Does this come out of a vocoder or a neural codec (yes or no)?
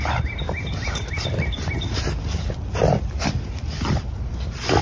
no